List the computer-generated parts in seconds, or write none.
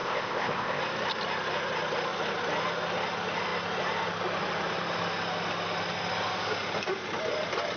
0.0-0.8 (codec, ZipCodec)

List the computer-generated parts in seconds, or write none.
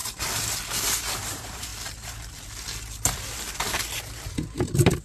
0.8-1.7 (vocoder, BigVGAN v2)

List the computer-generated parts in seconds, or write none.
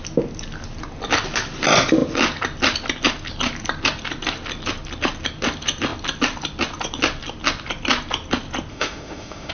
8.7-9.5 (autoencoder, DAC-VAE)